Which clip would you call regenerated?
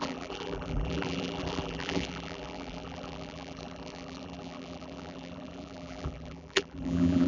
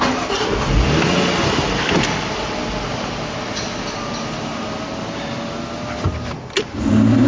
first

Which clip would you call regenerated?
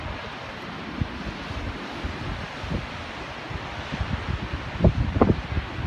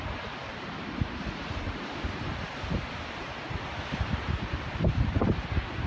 second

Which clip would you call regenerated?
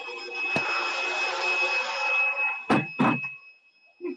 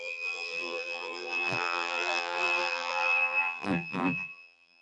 second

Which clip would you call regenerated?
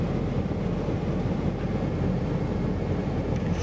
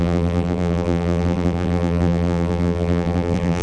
second